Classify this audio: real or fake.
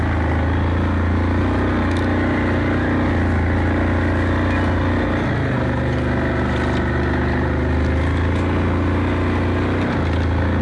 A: real